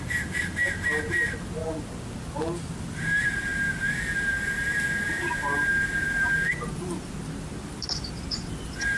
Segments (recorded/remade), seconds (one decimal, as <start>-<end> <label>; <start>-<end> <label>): 0.0-9.0 recorded